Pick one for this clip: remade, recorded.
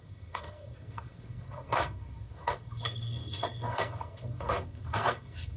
remade